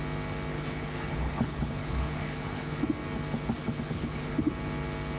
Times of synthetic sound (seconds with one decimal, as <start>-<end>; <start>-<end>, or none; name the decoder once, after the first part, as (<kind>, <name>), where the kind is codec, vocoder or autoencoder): 0.5-2.8 (codec, HILCodec); 3.6-4.5